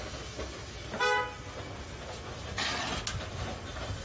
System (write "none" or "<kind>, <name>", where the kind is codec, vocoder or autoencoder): none